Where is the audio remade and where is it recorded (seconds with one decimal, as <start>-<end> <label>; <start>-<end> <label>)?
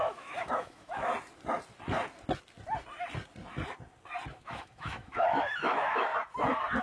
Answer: 0.0-1.1 remade; 1.1-4.3 recorded; 4.3-6.1 remade; 6.1-6.8 recorded